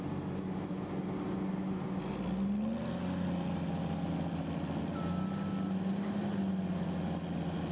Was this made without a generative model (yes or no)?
yes